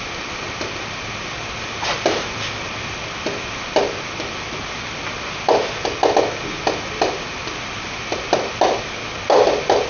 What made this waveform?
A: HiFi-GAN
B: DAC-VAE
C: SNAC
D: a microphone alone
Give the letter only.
D